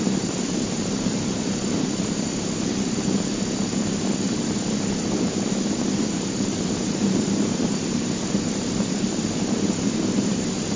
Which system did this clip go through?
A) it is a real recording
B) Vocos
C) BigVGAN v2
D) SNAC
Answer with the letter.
C